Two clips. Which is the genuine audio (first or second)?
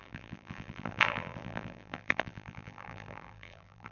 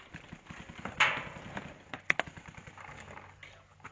second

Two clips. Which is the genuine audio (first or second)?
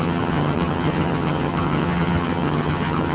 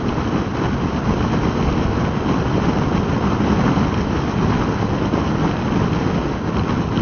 second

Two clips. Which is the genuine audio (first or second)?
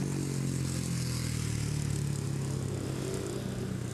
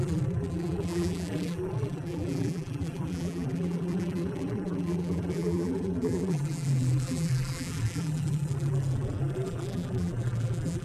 first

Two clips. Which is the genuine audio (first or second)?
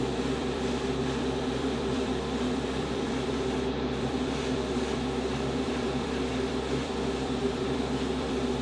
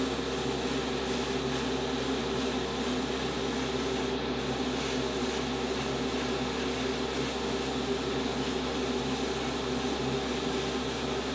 second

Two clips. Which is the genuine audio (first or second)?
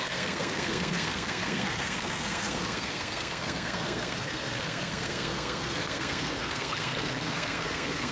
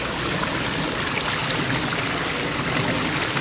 second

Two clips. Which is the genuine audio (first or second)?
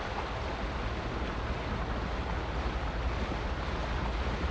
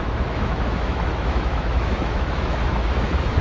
first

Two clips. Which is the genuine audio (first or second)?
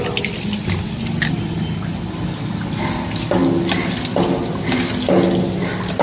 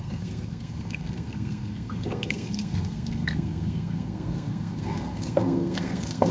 first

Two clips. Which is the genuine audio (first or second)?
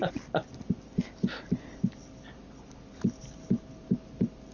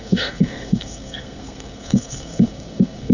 first